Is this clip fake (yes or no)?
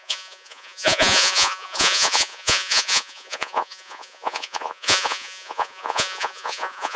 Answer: yes